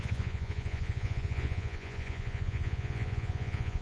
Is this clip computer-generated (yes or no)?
yes